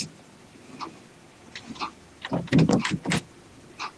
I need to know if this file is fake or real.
real